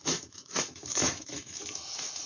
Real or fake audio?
fake